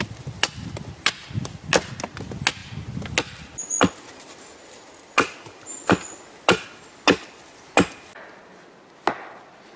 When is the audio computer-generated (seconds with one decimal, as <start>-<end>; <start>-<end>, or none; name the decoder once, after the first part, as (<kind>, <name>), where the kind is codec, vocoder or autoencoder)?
none